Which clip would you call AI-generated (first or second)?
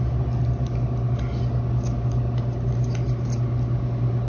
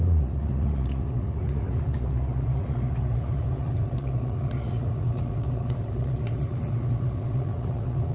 second